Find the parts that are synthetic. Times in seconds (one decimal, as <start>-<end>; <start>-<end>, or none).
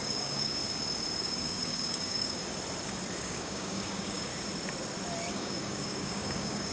0.0-0.6; 1.2-2.4; 3.2-4.3; 5.3-6.7